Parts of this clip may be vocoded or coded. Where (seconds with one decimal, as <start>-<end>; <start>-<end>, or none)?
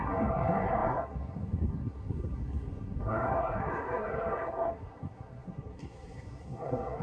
0.0-7.0